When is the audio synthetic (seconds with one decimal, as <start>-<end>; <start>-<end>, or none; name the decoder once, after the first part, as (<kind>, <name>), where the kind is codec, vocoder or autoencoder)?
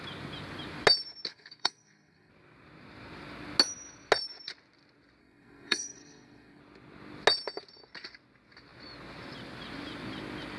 1.3-2.3 (codec, SNAC); 5.2-6.6